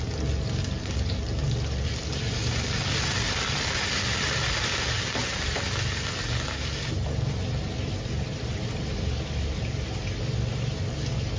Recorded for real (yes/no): yes